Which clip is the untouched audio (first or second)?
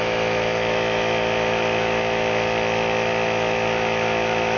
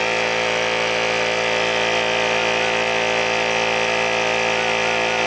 second